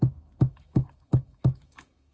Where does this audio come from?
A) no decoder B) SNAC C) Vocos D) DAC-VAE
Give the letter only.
D